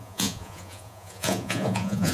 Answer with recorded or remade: remade